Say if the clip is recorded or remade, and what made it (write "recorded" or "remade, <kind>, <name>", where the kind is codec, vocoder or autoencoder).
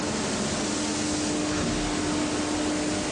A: recorded